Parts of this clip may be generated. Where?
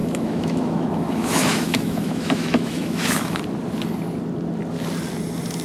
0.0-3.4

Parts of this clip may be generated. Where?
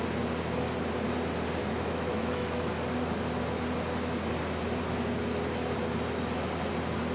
1.6-2.7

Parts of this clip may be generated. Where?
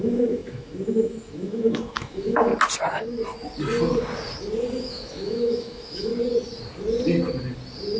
0.0-2.5; 4.8-6.1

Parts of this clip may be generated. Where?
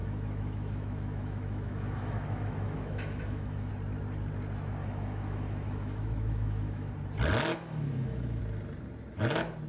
0.0-3.7; 4.8-6.9; 7.5-8.4